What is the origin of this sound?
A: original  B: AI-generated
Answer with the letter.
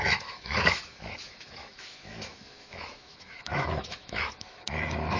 B